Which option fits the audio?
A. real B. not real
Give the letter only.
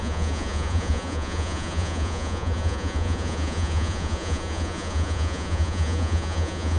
B